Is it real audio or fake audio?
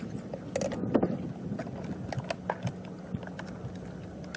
real